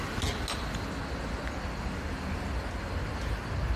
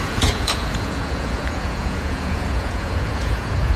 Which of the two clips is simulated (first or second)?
second